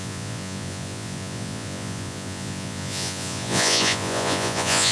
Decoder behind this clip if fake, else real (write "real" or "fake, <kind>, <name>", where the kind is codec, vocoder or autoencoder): fake, vocoder, Vocos